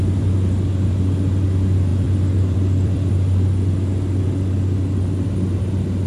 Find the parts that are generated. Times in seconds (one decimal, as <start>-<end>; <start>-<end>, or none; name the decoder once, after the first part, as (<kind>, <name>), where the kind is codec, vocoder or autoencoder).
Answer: 1.9-3.1 (vocoder, BigVGAN v2)